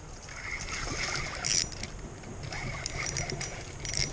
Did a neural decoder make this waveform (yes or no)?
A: no